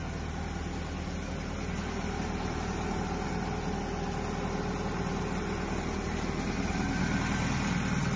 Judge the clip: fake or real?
real